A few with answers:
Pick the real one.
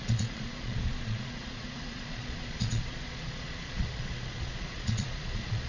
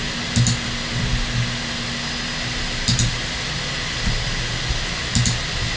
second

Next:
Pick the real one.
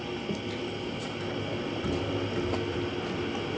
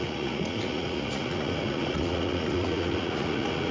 first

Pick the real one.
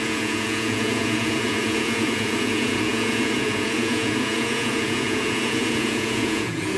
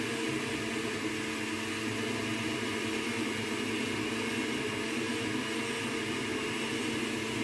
second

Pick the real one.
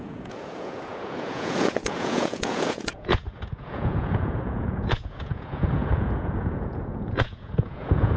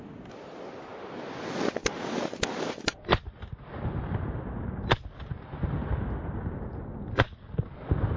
second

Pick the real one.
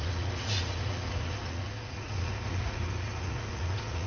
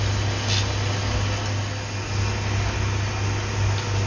second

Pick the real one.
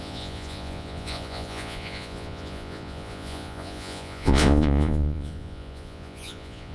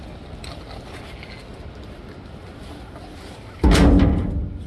second